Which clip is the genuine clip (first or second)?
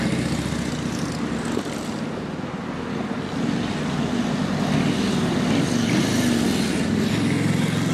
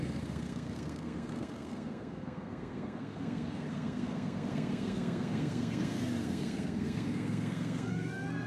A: first